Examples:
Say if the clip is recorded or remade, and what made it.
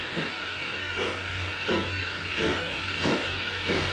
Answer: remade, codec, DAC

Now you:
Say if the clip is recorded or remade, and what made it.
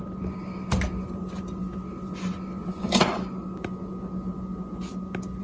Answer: recorded